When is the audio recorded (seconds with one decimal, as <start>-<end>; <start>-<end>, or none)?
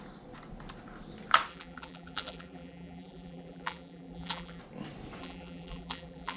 0.0-1.5; 4.6-5.2